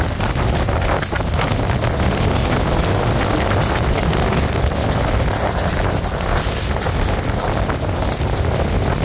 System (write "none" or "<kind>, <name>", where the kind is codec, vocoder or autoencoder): none